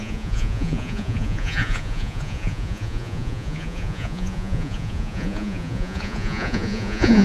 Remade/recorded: remade